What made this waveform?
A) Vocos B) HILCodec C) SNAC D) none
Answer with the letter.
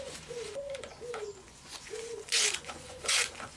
A